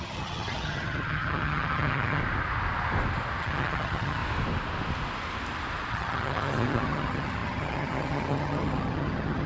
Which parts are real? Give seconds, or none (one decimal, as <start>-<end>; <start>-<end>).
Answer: 2.2-3.4; 4.2-5.9